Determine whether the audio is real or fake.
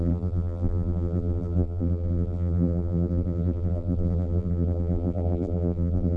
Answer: fake